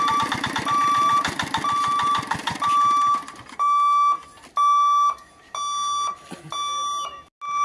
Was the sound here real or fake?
real